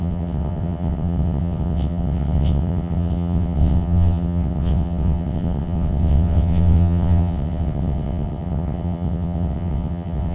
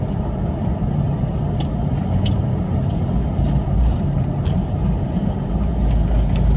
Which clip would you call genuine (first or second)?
second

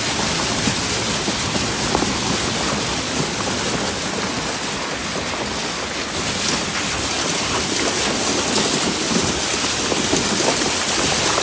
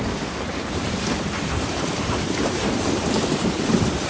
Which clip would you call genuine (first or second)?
first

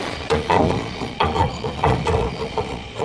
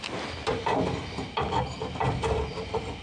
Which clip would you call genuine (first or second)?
second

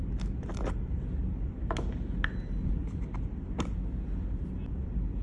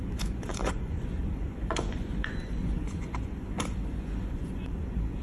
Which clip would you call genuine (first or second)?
first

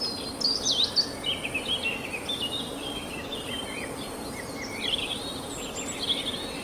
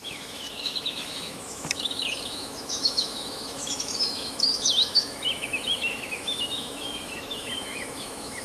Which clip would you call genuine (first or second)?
first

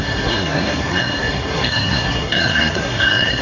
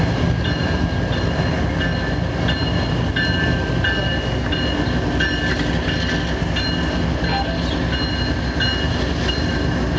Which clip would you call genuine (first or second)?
second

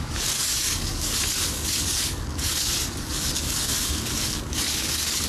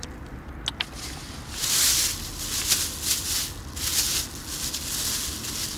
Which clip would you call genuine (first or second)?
second